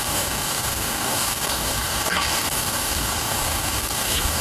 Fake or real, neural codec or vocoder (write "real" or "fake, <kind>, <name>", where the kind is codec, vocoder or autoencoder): fake, codec, DAC